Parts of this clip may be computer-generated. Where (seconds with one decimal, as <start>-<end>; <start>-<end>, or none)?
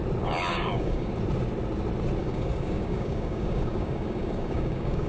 0.5-1.1; 2.2-5.1